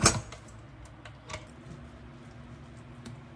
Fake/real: real